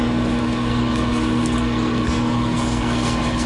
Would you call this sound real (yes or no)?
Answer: no